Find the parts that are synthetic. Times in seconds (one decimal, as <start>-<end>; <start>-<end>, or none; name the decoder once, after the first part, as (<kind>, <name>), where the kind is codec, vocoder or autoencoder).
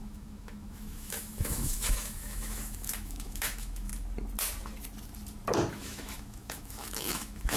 0.0-3.9 (autoencoder, DAC-VAE); 5.7-7.6